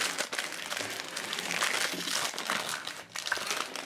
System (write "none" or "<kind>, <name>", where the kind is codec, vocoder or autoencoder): none